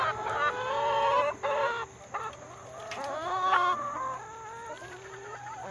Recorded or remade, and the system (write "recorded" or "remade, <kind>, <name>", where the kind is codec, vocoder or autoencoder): recorded